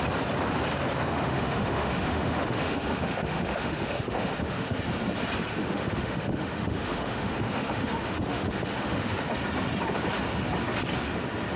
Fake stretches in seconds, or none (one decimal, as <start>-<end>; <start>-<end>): 1.1-4.8; 5.5-9.3